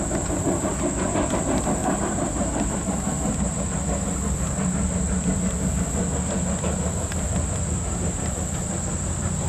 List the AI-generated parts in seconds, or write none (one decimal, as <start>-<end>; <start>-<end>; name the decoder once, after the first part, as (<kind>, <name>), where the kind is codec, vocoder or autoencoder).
1.8-3.6 (vocoder, BigVGAN v2)

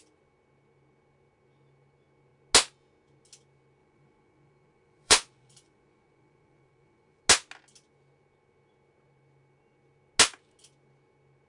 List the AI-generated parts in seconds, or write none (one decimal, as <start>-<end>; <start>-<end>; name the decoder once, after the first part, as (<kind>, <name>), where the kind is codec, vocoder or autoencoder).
3.8-7.2 (vocoder, Vocos)

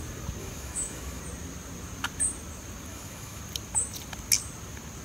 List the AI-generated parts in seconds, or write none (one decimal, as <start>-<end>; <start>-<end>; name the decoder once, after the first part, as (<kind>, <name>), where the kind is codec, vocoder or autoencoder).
0.4-1.2 (autoencoder, DAC-VAE); 2.9-3.4

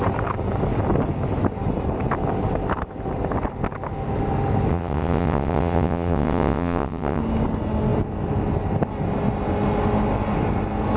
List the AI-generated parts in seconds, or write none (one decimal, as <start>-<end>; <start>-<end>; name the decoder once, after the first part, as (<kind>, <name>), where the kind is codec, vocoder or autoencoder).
4.7-7.2 (vocoder, WaveNeXt)

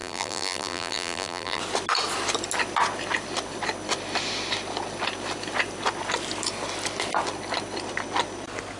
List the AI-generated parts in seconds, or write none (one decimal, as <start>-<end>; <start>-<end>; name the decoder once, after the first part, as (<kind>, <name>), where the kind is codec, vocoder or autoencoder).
0.0-1.6 (vocoder, BigVGAN v2)

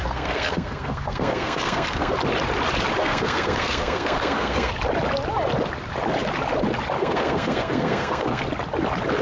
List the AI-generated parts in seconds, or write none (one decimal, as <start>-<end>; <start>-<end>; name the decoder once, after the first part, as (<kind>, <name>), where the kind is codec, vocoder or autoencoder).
0.0-2.1 (codec, SNAC); 3.0-4.7; 7.0-8.4